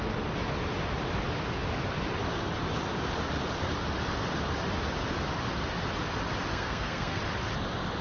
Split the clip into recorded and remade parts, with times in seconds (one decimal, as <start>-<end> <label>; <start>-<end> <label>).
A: 0.0-6.5 recorded; 6.5-7.2 remade; 7.2-8.0 recorded